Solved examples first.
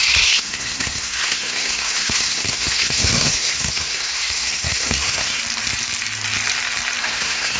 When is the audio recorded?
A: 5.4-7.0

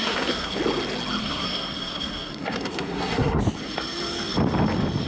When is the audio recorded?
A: 0.6-1.2; 3.4-5.1

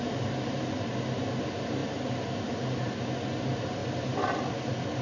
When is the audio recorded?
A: 0.0-3.8; 4.5-5.0

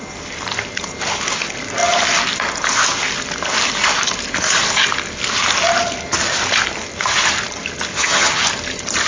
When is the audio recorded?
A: 0.0-7.9; 8.4-9.1